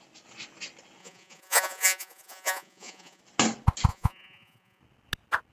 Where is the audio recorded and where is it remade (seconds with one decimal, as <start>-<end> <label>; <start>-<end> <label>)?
0.0-1.0 recorded; 1.0-3.2 remade; 3.2-3.9 recorded; 3.9-4.8 remade; 4.8-5.5 recorded